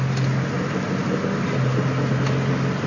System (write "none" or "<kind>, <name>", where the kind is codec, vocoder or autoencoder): none